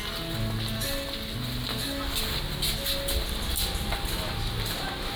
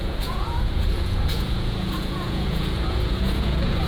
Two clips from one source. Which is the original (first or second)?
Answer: first